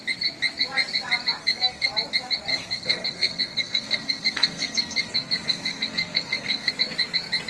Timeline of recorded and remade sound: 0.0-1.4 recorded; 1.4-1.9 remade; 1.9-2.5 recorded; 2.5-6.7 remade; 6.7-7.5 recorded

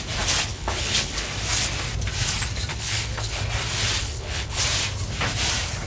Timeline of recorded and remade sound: 0.0-0.5 recorded; 0.5-1.3 remade; 1.3-2.7 recorded; 2.7-3.4 remade; 3.4-4.0 recorded; 4.0-4.6 remade; 4.6-5.9 recorded

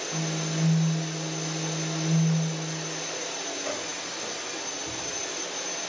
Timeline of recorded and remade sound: 0.0-5.9 recorded